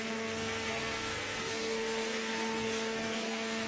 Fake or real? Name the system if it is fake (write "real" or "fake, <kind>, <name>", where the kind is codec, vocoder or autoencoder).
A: fake, codec, SNAC